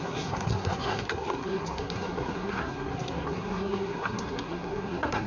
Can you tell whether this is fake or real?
fake